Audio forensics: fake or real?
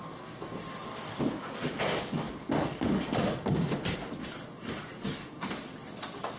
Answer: real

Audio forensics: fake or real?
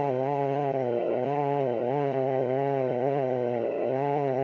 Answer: fake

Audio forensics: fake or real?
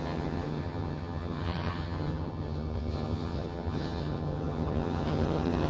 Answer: fake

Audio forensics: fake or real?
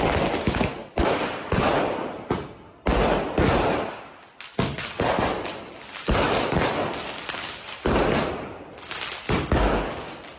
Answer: real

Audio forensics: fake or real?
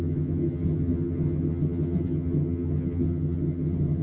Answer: fake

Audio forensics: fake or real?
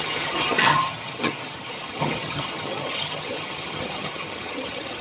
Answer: fake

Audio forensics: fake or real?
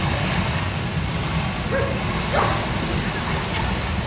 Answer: real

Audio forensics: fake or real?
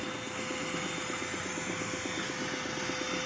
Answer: real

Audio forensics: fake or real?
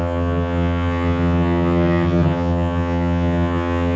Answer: fake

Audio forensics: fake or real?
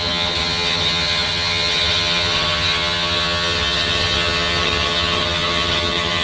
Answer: fake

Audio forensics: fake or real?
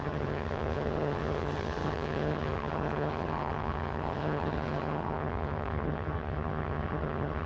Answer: fake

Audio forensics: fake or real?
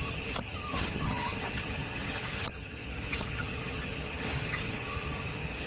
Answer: fake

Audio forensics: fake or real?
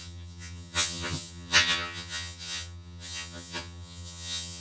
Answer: fake